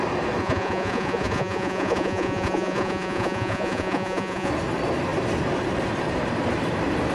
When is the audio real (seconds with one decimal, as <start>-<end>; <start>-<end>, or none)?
0.0-0.4; 4.5-7.1